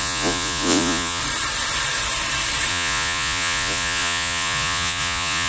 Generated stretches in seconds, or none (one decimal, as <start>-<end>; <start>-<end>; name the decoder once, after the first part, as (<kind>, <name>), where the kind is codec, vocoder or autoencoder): 0.0-1.2 (vocoder, Vocos); 2.7-5.5